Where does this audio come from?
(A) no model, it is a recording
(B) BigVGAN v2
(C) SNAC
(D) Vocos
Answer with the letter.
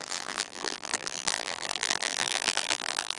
B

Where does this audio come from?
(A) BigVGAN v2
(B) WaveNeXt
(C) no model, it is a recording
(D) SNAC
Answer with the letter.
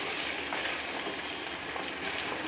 C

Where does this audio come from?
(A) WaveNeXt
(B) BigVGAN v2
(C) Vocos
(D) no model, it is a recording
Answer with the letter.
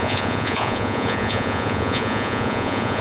C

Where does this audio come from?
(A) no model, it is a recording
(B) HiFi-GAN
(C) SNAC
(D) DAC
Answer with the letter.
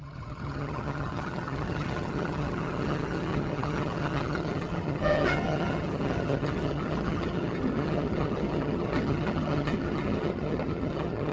B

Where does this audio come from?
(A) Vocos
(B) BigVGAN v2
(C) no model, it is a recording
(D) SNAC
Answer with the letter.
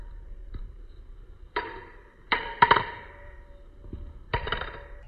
B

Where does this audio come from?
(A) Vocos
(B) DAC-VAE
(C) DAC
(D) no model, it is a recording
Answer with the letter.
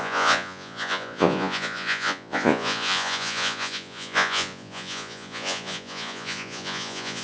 A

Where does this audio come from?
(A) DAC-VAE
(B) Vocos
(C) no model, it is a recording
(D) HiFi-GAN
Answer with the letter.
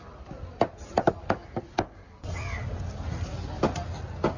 C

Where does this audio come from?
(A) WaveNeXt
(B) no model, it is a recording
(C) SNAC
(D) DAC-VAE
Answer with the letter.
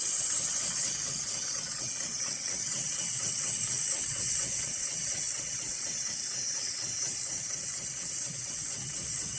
A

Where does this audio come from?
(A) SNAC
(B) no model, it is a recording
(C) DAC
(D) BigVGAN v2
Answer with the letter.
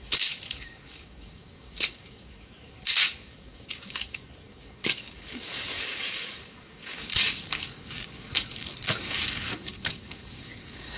C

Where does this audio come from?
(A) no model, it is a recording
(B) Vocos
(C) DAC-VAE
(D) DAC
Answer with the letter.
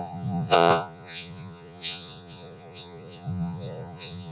B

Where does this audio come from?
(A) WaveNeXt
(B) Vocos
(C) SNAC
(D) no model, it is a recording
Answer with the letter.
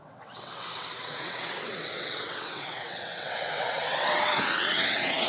A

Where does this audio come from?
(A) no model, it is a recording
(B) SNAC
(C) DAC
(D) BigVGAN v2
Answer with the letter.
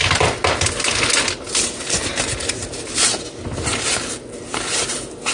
A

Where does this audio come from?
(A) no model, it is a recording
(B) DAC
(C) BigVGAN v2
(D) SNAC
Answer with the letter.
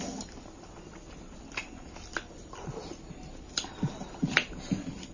A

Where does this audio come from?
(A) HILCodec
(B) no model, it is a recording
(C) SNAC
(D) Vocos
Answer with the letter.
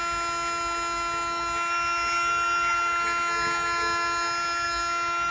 B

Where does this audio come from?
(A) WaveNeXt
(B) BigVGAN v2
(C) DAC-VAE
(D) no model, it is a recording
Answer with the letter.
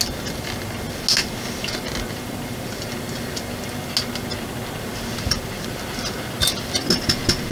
D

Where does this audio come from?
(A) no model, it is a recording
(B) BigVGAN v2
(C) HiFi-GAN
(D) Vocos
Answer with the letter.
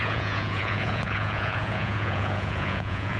D